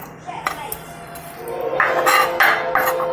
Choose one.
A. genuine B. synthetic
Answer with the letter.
A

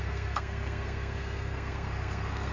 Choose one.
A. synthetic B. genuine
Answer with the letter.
A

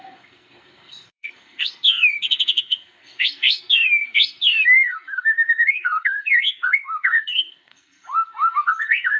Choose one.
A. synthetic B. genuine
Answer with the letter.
A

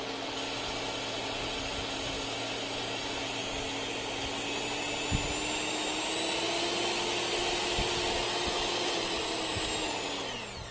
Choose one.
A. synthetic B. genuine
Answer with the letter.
B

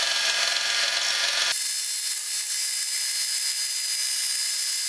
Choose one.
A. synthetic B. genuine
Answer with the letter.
B